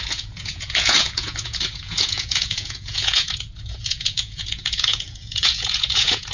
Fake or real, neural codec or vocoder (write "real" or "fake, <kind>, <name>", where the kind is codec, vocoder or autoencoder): fake, vocoder, Vocos